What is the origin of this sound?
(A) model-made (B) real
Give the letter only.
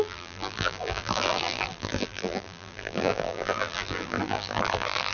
A